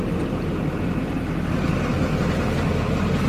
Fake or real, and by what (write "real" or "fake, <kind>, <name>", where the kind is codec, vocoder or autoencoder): real